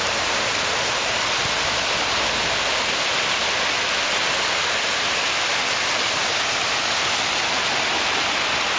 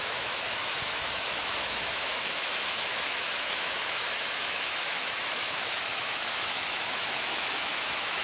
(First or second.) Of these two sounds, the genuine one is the first